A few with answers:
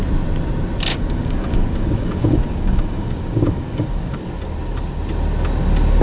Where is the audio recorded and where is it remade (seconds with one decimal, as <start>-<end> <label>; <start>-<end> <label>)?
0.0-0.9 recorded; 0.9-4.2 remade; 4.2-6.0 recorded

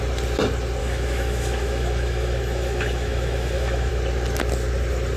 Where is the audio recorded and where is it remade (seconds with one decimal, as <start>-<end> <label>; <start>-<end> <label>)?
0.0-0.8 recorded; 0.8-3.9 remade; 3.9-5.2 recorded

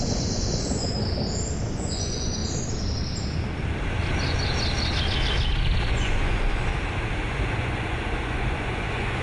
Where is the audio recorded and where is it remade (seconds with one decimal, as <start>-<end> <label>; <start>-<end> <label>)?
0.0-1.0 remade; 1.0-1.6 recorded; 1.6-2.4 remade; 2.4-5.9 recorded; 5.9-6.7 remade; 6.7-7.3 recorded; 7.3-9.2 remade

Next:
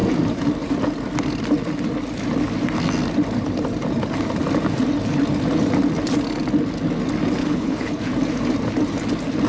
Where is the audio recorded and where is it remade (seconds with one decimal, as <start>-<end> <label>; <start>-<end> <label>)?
0.0-7.4 recorded; 7.4-8.0 remade; 8.0-9.5 recorded

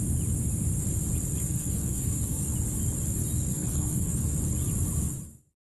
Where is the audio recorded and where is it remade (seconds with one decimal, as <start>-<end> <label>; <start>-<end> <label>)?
0.0-1.4 recorded; 1.4-2.5 remade; 2.5-3.5 recorded; 3.5-4.2 remade; 4.2-5.8 recorded

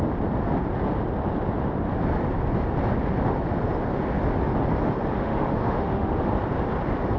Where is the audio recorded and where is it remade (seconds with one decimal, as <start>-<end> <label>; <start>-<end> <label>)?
0.0-5.2 recorded; 5.2-6.2 remade; 6.2-7.2 recorded

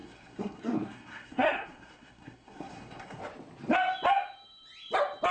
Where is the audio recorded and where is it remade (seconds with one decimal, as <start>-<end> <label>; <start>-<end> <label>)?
0.0-3.2 remade; 3.2-5.3 recorded